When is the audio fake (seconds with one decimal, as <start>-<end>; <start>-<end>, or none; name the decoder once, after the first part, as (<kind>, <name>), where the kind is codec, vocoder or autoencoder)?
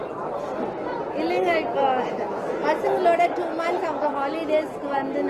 0.0-1.0 (vocoder, BigVGAN v2)